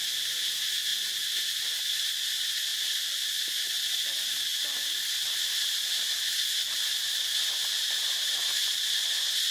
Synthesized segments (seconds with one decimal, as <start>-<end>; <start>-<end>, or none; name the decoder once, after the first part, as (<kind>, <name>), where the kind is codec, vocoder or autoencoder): 2.7-3.7 (vocoder, BigVGAN v2)